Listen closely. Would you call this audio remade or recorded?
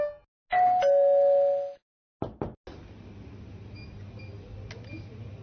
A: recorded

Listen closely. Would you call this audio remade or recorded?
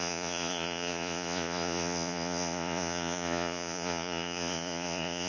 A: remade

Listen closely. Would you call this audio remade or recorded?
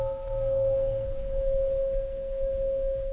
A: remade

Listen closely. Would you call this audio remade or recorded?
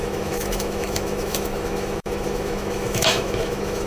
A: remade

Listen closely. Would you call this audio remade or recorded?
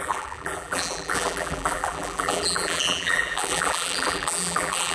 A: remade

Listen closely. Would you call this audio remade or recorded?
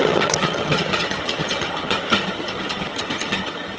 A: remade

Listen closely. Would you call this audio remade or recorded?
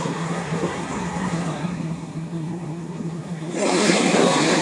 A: remade